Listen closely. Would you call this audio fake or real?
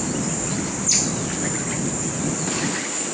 real